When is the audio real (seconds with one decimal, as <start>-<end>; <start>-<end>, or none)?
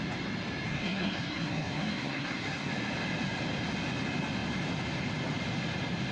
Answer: 0.0-0.7; 2.7-6.1